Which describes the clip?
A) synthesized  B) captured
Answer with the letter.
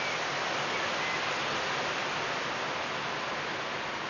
B